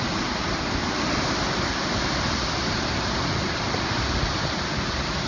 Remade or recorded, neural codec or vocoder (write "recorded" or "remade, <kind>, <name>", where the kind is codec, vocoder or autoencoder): recorded